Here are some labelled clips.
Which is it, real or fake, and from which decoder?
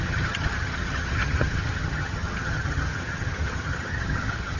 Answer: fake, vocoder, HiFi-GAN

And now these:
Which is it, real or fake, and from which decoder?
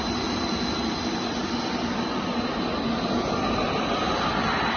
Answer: real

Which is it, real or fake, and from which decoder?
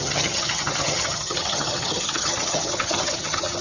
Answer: fake, vocoder, HiFi-GAN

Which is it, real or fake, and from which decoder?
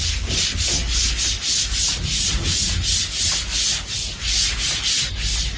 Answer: real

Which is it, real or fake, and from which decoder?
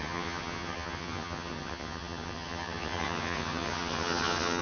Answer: fake, vocoder, HiFi-GAN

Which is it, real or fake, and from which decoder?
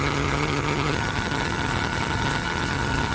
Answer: fake, vocoder, HiFi-GAN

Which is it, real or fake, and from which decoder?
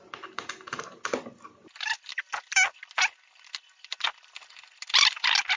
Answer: real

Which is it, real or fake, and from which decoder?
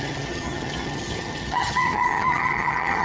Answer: fake, vocoder, HiFi-GAN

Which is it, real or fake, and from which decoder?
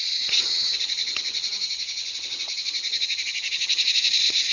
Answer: fake, vocoder, HiFi-GAN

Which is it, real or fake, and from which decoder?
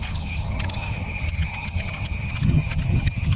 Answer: fake, vocoder, HiFi-GAN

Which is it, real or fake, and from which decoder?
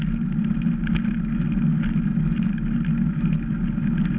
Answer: real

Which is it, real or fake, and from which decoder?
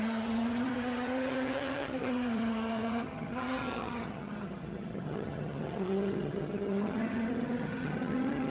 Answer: fake, vocoder, HiFi-GAN